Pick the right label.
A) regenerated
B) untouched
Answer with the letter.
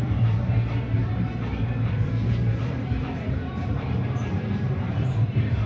A